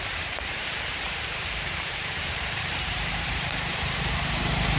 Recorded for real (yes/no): no